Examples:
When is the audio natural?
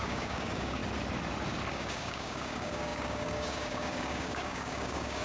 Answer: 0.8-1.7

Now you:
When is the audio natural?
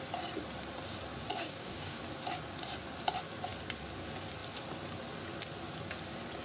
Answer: 0.0-1.4; 2.0-6.4